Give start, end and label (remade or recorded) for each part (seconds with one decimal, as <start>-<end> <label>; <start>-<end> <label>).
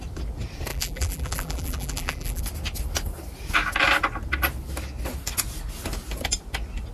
0.0-0.7 recorded; 0.7-2.4 remade; 2.4-6.9 recorded